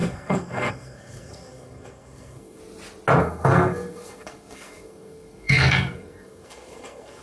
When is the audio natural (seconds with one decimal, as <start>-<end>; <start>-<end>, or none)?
2.6-3.2